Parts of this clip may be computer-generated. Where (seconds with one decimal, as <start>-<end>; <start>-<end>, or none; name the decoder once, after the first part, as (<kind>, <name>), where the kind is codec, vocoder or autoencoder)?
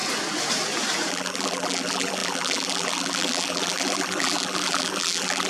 1.1-5.5 (vocoder, BigVGAN v2)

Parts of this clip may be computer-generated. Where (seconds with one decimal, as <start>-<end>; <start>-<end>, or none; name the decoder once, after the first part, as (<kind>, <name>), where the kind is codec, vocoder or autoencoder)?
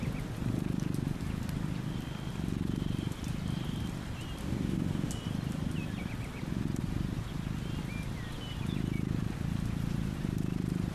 4.4-5.1 (codec, DAC)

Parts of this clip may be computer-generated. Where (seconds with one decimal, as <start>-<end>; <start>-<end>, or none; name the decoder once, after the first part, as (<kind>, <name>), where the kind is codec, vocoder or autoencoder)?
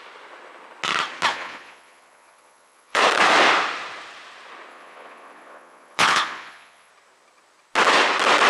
1.3-3.0 (vocoder, Vocos); 4.7-6.9